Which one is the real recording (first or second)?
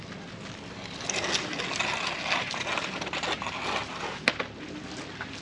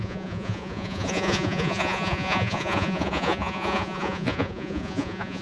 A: first